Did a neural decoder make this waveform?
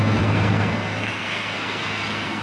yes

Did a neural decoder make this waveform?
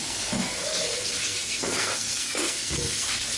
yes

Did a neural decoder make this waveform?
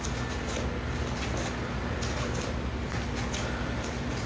no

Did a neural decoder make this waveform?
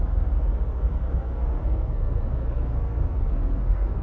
yes